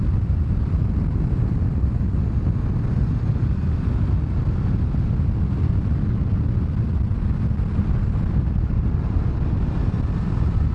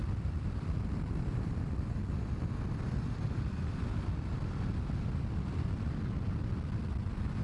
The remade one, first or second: second